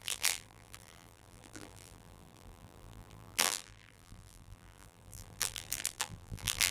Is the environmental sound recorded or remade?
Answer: remade